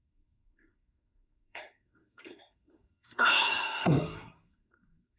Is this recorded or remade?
remade